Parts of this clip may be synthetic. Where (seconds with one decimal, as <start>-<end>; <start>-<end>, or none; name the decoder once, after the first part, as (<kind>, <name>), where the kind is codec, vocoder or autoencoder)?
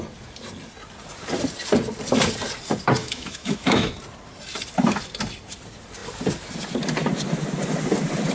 3.0-3.9 (autoencoder, DAC-VAE)